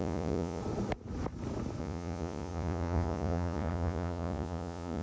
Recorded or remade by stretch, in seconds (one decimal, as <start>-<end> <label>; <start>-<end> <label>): 0.0-0.6 remade; 0.6-1.8 recorded; 1.8-5.0 remade